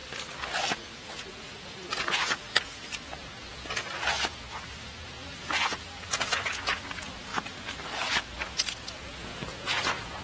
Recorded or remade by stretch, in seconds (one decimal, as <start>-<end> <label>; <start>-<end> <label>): 0.0-0.7 recorded; 0.7-7.3 remade; 7.3-8.4 recorded; 8.4-10.2 remade

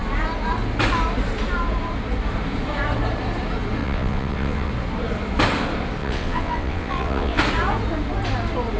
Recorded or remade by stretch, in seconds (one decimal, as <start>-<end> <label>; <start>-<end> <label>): 0.0-3.8 recorded; 3.8-4.7 remade; 4.7-6.0 recorded; 6.0-7.4 remade; 7.4-8.8 recorded

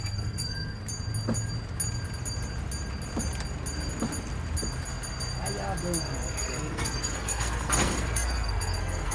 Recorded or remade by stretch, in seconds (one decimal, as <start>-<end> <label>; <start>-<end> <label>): 0.0-0.8 remade; 0.8-6.0 recorded; 6.0-9.1 remade